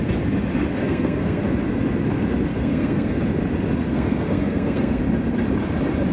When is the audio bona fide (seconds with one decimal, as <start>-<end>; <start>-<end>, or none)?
0.0-0.7; 1.4-2.5; 3.2-3.9; 5.0-6.1